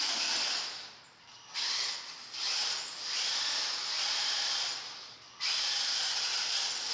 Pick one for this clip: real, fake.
real